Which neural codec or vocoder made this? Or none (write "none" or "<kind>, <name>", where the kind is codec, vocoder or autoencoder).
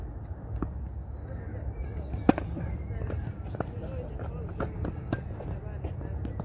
none